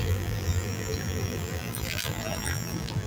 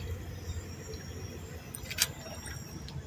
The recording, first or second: second